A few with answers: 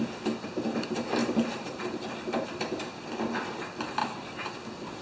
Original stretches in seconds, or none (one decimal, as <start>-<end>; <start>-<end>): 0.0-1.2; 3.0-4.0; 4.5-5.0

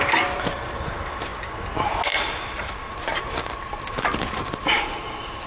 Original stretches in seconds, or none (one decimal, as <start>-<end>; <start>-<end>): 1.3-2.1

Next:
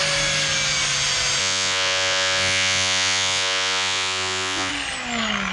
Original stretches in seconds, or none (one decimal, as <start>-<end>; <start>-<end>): 0.0-1.4; 4.7-5.5

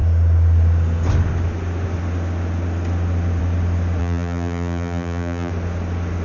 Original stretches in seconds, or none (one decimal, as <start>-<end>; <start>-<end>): 0.0-4.0; 5.5-6.2